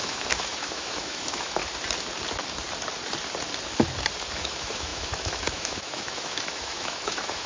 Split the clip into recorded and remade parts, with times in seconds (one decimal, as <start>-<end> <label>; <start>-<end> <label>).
0.0-1.6 remade; 1.6-4.3 recorded; 4.3-7.5 remade